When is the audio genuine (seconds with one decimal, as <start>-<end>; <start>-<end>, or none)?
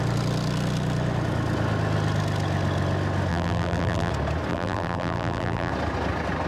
0.0-3.3; 4.1-4.5; 5.7-6.5